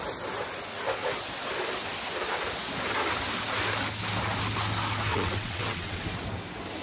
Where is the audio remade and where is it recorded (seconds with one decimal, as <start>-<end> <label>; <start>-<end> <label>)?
0.0-5.1 recorded; 5.1-6.0 remade; 6.0-6.8 recorded